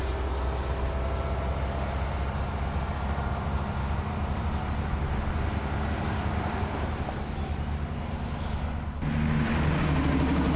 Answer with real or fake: real